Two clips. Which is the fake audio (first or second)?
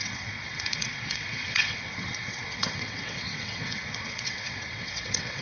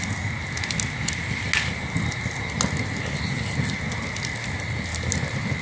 first